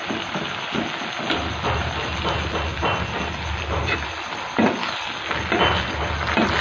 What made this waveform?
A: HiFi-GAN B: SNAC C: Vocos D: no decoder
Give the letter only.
D